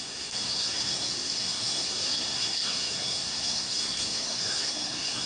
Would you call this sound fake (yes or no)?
yes